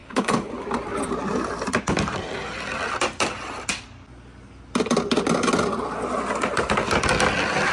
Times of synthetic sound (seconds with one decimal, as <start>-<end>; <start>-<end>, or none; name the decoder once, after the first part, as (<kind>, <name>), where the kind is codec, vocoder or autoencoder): 0.0-0.5 (codec, HILCodec)